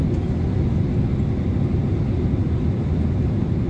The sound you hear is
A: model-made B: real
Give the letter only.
B